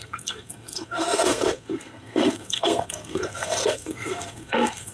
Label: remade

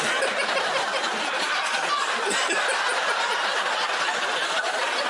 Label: recorded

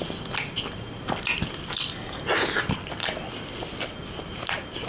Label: recorded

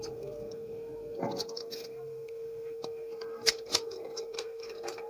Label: remade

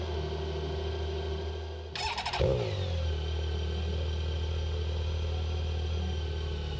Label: recorded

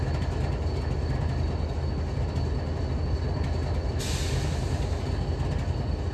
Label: recorded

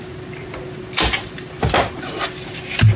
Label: recorded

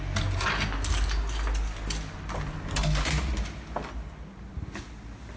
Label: recorded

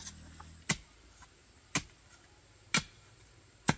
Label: recorded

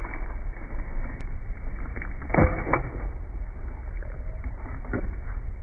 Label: recorded